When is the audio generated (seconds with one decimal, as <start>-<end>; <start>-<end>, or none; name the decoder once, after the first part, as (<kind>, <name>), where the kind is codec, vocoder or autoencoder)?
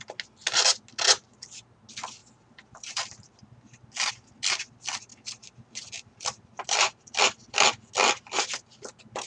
2.2-4.1 (vocoder, BigVGAN v2); 5.1-7.2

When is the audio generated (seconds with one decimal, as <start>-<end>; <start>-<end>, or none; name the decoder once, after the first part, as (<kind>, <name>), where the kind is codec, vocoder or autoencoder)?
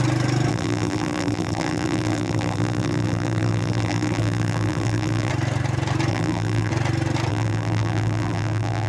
0.5-5.3 (vocoder, BigVGAN v2); 6.1-6.7; 7.3-8.9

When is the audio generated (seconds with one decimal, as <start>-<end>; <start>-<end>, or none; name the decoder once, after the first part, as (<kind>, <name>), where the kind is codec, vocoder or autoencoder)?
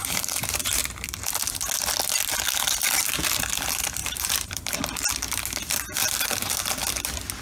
0.0-0.8 (vocoder, BigVGAN v2); 4.0-4.7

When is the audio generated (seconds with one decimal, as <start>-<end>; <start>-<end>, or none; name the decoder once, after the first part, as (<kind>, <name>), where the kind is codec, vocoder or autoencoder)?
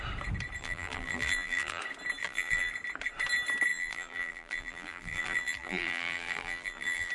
0.6-1.8 (vocoder, BigVGAN v2); 2.2-2.7; 3.7-7.1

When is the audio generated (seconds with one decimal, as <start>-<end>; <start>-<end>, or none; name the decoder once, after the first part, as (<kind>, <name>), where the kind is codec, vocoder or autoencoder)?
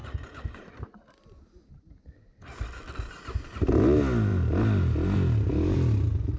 0.0-2.0 (vocoder, BigVGAN v2)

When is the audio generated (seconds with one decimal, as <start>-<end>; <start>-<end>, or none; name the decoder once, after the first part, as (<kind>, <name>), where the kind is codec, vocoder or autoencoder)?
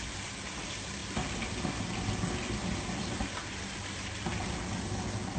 3.5-4.3 (vocoder, BigVGAN v2)